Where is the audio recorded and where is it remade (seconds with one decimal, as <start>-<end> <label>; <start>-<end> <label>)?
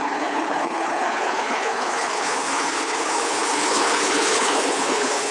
0.0-5.3 remade